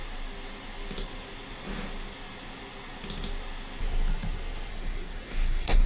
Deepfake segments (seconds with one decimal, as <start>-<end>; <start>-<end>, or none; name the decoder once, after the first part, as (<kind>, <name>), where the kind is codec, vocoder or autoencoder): 4.7-5.9 (codec, SNAC)